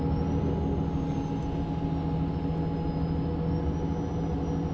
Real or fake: real